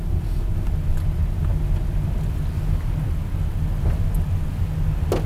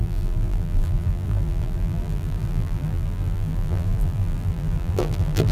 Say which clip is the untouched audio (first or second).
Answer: first